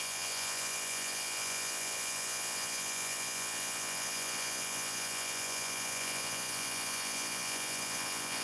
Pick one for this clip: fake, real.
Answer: fake